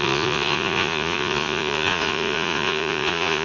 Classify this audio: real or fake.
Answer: fake